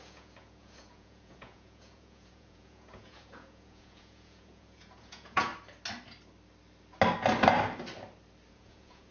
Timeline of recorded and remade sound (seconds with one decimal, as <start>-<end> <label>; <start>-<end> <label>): 0.0-5.5 remade; 5.5-8.5 recorded; 8.5-9.1 remade